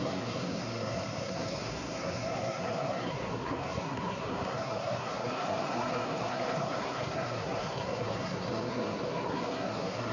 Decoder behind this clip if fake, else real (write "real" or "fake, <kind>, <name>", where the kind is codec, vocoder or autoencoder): fake, codec, SNAC